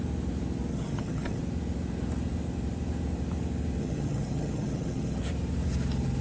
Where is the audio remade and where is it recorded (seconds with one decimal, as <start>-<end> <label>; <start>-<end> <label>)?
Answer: 0.0-0.7 recorded; 0.7-1.4 remade; 1.4-3.8 recorded; 3.8-5.2 remade; 5.2-6.2 recorded